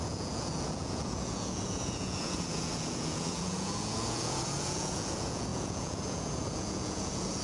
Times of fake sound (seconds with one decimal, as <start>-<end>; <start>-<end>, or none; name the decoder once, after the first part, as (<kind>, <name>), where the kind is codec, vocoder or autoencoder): 0.0-7.4 (vocoder, Vocos)